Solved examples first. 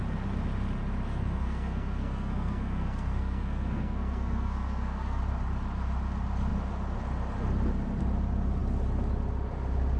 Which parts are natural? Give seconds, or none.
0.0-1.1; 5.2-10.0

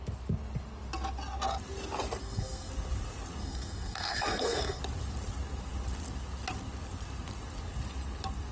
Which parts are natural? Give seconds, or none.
0.0-2.2; 2.7-3.4; 4.8-8.5

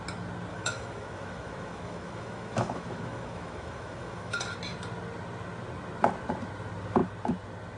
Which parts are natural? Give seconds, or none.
0.0-0.5; 4.4-7.8

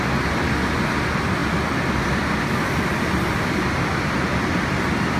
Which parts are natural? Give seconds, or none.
0.0-1.4; 2.5-5.2

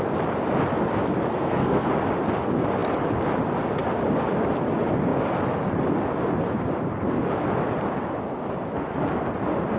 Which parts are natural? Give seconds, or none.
0.0-1.3; 1.9-9.8

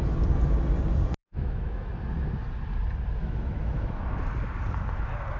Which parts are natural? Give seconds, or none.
0.0-1.2; 1.9-3.2; 4.0-5.4